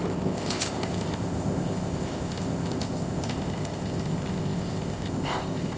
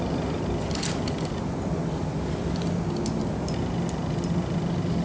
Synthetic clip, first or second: first